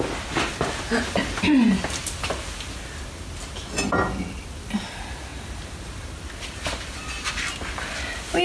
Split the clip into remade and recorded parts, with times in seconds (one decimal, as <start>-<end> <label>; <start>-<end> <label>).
0.0-8.4 recorded